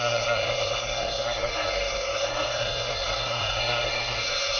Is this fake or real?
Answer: fake